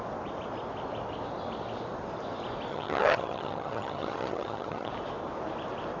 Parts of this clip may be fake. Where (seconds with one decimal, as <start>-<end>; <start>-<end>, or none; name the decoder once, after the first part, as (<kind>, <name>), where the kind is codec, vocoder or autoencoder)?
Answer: 2.7-4.9 (vocoder, HiFi-GAN)